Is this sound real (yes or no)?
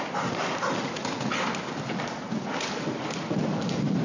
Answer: yes